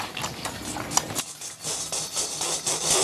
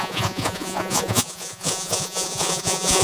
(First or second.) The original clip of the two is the first